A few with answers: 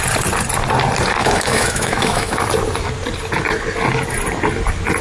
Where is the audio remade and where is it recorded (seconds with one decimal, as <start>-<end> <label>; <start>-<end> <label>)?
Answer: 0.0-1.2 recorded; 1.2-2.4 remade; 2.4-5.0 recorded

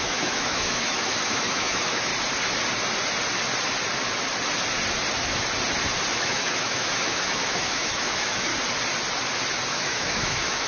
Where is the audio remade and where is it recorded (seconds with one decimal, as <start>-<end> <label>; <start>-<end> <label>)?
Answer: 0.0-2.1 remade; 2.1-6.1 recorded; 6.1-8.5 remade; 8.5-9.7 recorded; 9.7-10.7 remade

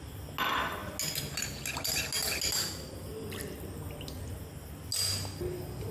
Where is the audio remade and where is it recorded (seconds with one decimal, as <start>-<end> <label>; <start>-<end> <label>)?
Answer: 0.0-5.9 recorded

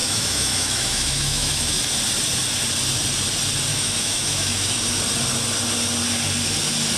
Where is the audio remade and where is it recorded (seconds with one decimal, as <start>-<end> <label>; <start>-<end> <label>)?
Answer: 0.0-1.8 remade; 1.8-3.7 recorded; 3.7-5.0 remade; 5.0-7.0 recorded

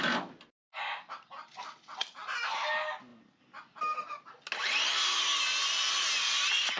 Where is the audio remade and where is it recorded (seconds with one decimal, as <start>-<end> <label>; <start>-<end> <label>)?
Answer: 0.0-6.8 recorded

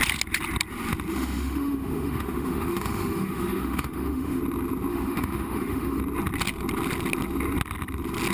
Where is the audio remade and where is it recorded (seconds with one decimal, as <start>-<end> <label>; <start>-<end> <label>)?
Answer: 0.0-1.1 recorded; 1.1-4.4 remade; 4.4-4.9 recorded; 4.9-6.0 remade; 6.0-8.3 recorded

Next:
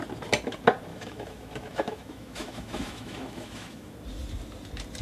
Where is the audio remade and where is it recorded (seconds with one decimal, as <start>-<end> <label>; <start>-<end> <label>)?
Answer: 0.0-0.9 recorded; 0.9-3.9 remade; 3.9-5.0 recorded

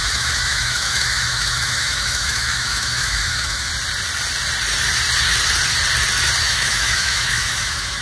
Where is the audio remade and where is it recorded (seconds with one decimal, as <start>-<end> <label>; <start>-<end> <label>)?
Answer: 0.0-3.7 remade; 3.7-6.4 recorded; 6.4-8.0 remade